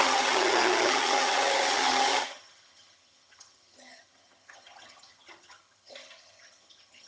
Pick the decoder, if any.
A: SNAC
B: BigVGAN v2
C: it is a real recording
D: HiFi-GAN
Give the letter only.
D